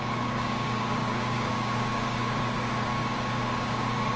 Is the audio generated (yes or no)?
yes